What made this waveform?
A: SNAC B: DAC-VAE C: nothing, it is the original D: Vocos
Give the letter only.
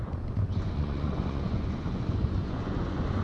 D